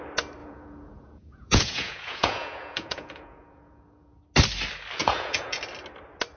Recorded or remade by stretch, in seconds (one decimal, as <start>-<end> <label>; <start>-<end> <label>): 0.0-0.4 recorded; 0.4-4.2 remade; 4.2-5.0 recorded; 5.0-5.6 remade; 5.6-6.4 recorded